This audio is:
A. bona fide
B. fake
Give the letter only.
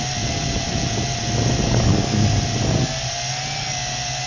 A